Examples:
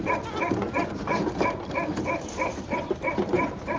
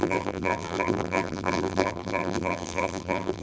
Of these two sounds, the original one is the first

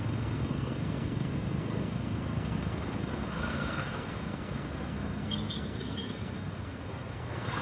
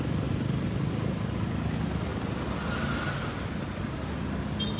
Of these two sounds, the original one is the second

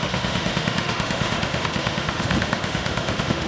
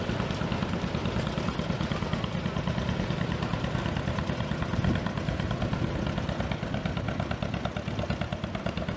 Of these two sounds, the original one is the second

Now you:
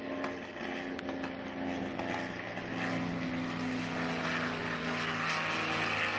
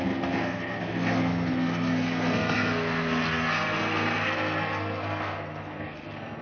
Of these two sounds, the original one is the first